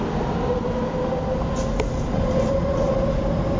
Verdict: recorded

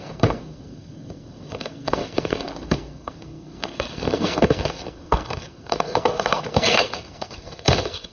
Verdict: remade